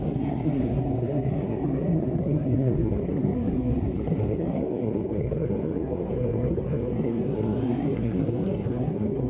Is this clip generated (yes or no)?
yes